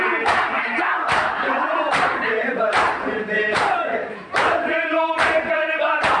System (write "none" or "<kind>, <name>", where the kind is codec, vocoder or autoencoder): vocoder, BigVGAN v2